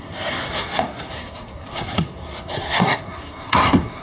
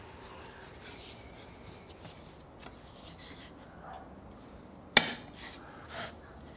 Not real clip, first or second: first